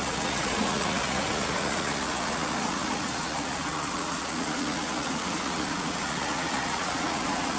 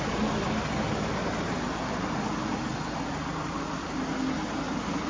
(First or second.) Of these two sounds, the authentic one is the second